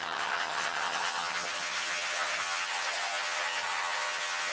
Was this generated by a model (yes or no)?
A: yes